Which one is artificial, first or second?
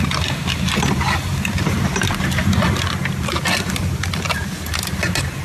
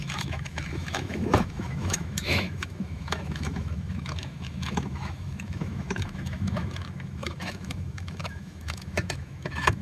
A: second